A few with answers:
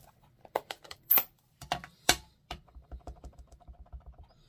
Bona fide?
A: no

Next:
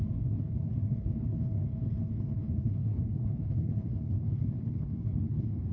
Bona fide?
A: no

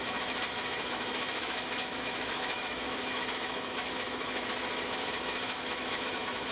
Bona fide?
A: no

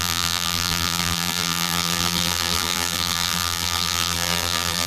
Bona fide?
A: no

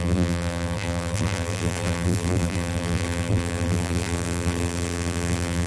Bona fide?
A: no